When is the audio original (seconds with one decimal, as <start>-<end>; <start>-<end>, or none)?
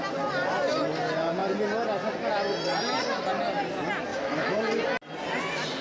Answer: 0.0-4.1; 4.7-5.8